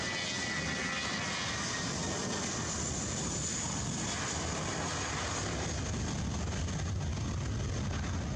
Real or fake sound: real